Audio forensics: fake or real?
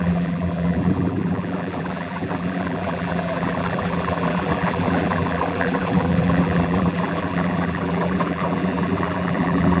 fake